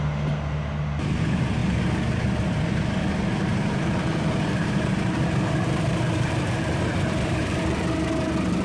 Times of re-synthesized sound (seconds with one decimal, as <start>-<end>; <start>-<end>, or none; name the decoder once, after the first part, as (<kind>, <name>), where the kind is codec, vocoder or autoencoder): 3.5-7.6 (vocoder, BigVGAN v2)

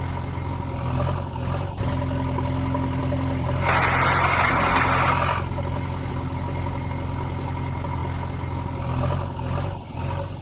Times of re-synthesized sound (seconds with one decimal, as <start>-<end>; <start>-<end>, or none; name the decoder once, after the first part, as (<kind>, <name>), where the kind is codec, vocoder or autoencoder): none